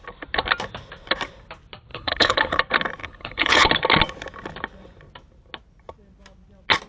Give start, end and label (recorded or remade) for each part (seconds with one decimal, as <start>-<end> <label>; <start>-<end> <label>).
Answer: 0.0-1.9 recorded; 1.9-2.6 remade; 2.6-3.0 recorded; 3.0-3.7 remade; 3.7-6.9 recorded